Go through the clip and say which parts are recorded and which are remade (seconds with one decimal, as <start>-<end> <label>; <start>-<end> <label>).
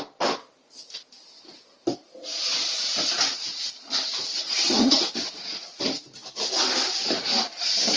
0.0-4.3 recorded; 4.3-5.0 remade; 5.0-8.0 recorded